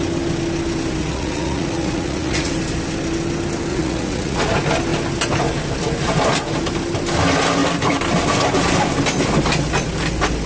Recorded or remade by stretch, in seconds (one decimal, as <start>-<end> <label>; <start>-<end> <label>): 0.0-1.0 recorded; 1.0-2.5 remade; 2.5-3.7 recorded; 3.7-4.4 remade; 4.4-10.5 recorded